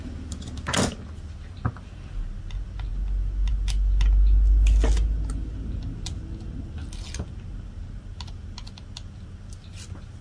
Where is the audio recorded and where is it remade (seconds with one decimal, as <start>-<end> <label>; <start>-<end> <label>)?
0.0-10.2 recorded

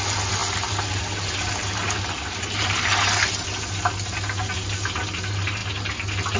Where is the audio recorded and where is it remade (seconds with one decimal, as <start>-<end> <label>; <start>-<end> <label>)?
0.0-6.4 recorded